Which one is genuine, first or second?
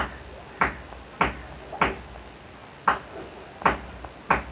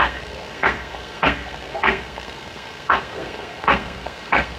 first